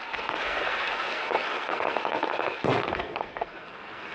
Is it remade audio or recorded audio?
remade